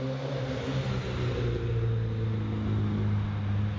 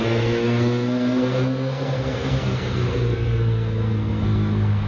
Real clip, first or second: first